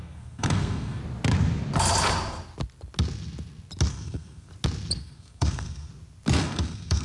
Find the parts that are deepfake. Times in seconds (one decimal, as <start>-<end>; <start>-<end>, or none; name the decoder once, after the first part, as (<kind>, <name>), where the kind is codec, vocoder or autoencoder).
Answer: 0.0-1.0 (codec, SNAC); 3.9-4.5; 5.0-5.9; 6.4-7.0